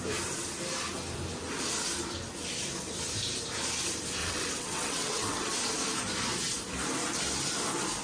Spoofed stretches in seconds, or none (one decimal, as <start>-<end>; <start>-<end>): 4.2-5.5

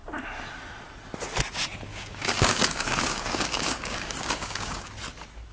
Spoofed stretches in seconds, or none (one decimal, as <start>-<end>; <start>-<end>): 1.9-4.9

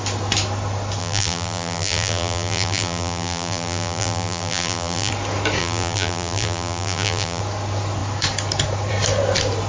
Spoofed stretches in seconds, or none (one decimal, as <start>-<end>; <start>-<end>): 1.0-5.1; 5.6-7.4

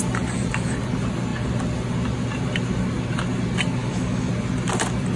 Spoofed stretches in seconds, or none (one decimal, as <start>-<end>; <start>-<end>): 3.8-4.3